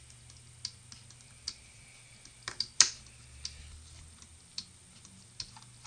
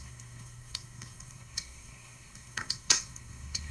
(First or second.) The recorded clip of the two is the first